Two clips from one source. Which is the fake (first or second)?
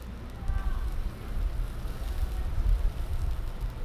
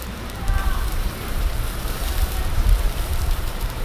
second